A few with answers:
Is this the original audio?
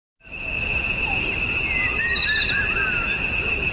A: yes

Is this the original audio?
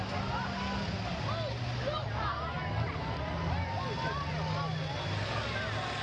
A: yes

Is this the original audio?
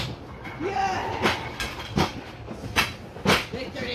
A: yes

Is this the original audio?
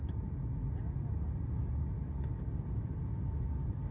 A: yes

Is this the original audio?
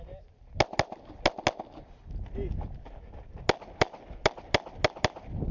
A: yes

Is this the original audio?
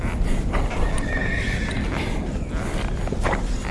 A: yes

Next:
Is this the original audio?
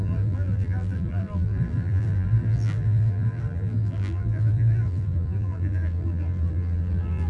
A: no